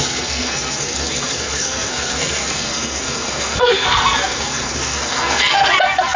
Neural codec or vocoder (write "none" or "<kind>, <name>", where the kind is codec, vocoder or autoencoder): codec, SNAC